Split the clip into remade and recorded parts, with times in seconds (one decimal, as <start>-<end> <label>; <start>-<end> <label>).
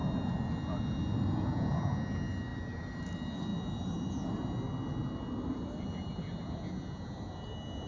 0.0-7.9 recorded